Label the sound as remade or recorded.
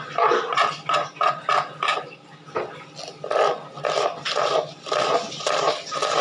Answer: recorded